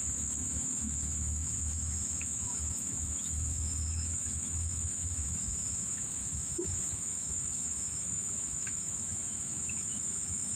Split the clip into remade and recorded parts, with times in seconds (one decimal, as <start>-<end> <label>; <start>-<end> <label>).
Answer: 0.0-10.6 remade